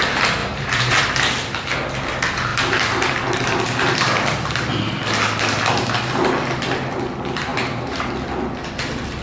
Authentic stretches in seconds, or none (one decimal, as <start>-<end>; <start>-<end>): 0.0-0.4; 1.0-7.5; 8.1-9.2